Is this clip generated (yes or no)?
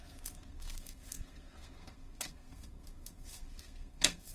yes